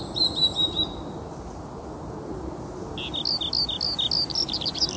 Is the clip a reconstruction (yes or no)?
no